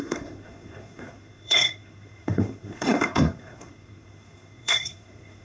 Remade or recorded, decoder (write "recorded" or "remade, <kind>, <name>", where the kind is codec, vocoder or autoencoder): remade, codec, SNAC